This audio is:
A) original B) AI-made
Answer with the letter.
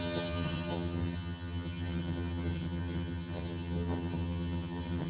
B